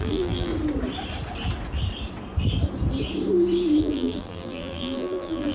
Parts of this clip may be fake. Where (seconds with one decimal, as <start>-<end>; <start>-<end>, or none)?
0.0-0.5; 3.8-5.5